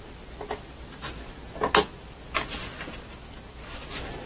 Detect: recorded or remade recorded